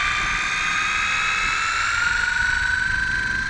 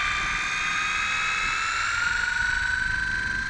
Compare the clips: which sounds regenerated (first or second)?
first